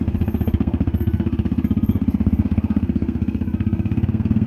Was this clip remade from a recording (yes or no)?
yes